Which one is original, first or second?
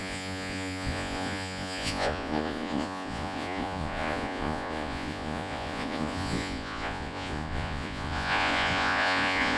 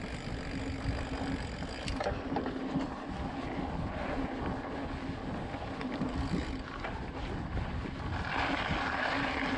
second